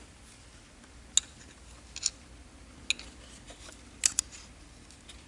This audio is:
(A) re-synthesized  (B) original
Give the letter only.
B